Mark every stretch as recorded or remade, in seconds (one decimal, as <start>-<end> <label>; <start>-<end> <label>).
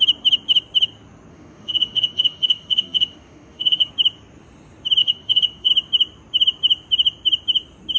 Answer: 0.0-1.3 recorded; 1.3-3.9 remade; 3.9-5.0 recorded; 5.0-5.7 remade; 5.7-8.0 recorded